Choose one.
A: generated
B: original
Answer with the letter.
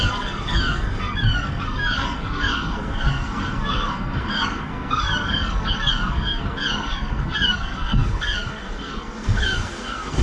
A